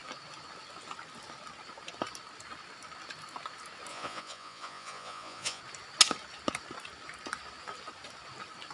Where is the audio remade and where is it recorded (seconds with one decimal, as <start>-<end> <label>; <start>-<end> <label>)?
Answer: 0.0-3.9 recorded; 3.9-5.6 remade; 5.6-8.7 recorded

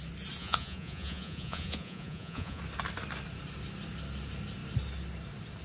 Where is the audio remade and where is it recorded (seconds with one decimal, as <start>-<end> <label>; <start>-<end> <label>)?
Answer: 0.0-0.4 recorded; 0.4-2.6 remade; 2.6-5.6 recorded

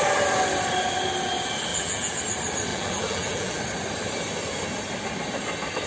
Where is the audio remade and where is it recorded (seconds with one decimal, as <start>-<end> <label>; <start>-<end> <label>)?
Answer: 0.0-1.7 recorded; 1.7-2.2 remade; 2.2-2.7 recorded; 2.7-3.6 remade; 3.6-5.9 recorded

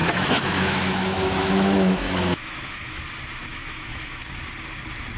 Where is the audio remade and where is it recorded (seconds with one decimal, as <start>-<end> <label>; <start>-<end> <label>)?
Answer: 0.0-3.0 remade; 3.0-3.5 recorded; 3.5-4.2 remade; 4.2-5.2 recorded

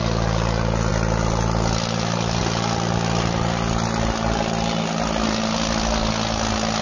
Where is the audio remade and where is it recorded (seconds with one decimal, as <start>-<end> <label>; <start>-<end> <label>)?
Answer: 0.0-6.8 recorded